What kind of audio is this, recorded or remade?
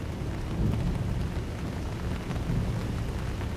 recorded